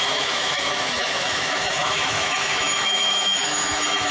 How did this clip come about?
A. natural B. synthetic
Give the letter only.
B